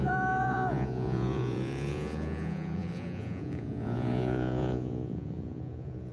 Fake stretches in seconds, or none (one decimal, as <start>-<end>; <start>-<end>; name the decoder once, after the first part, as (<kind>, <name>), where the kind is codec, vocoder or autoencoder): 0.0-6.1 (vocoder, Vocos)